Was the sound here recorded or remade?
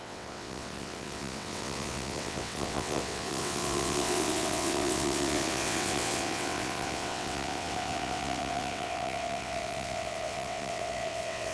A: remade